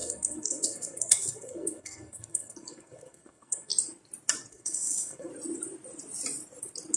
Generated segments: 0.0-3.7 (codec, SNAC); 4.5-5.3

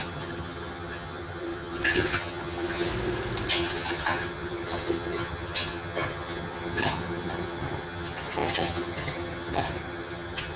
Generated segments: 0.0-2.9 (vocoder, HiFi-GAN); 3.5-10.6

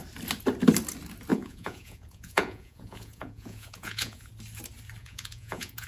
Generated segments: 1.3-4.3 (vocoder, Vocos); 5.0-5.9